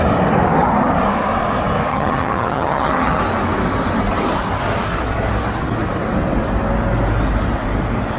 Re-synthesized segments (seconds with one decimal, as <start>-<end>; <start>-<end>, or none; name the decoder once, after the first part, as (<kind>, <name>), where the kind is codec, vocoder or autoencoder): 1.9-3.2 (vocoder, HiFi-GAN)